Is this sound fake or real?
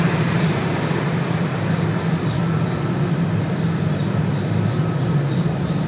real